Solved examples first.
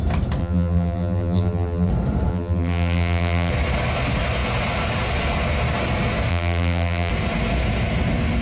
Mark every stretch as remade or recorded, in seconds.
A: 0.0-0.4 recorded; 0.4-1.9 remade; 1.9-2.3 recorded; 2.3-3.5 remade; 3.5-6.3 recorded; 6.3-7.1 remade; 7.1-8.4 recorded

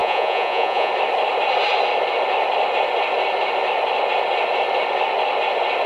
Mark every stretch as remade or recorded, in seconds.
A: 0.0-0.9 remade; 0.9-5.9 recorded